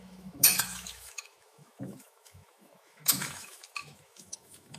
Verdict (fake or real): fake